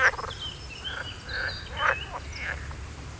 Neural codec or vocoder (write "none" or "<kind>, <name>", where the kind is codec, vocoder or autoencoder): none